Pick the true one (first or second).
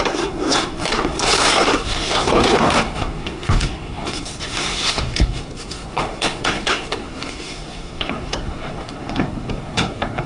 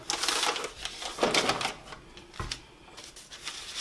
second